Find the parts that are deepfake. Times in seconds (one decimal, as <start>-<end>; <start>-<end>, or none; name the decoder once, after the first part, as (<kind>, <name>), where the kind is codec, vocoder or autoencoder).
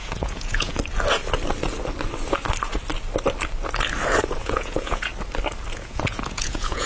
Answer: 0.0-0.7 (vocoder, Vocos); 4.4-5.1; 5.7-6.9